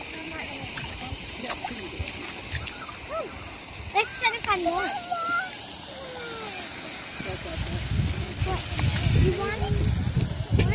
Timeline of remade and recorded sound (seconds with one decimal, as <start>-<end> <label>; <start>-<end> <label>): 0.0-2.2 remade; 2.2-10.7 recorded